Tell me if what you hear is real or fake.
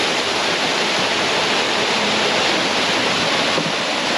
real